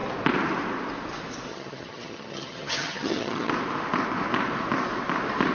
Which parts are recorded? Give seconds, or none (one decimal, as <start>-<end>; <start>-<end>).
0.0-1.5; 3.5-5.5